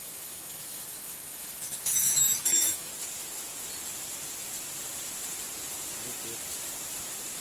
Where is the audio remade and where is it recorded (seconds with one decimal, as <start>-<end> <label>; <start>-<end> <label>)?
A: 0.0-2.9 remade; 2.9-7.4 recorded